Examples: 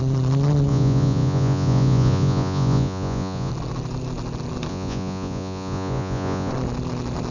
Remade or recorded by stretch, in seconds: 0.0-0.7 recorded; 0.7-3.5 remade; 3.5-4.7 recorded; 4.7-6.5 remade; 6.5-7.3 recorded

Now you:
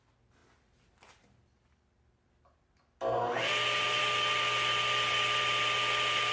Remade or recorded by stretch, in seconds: 0.0-6.3 recorded

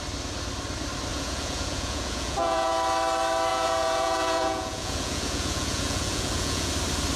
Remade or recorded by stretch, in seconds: 0.0-1.1 recorded; 1.1-2.7 remade; 2.7-3.5 recorded; 3.5-6.7 remade; 6.7-7.2 recorded

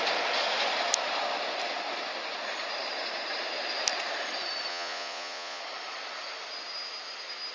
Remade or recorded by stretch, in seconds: 0.0-4.7 recorded; 4.7-5.6 remade; 5.6-7.5 recorded

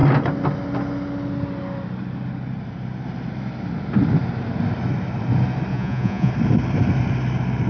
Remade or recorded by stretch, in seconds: 0.0-5.7 recorded; 5.7-6.3 remade; 6.3-7.7 recorded

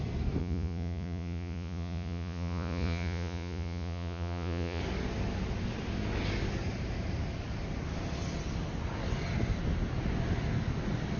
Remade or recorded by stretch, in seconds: 0.0-0.4 recorded; 0.4-4.8 remade; 4.8-11.2 recorded

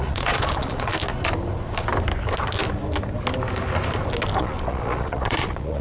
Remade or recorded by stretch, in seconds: 0.0-0.9 remade; 0.9-4.4 recorded; 4.4-5.8 remade

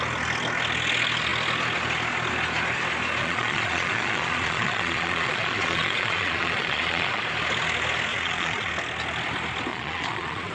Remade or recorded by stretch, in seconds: 0.0-3.2 recorded; 3.2-7.2 remade; 7.2-8.1 recorded; 8.1-8.7 remade; 8.7-9.7 recorded; 9.7-10.5 remade